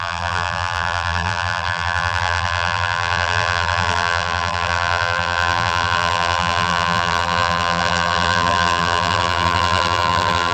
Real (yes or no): no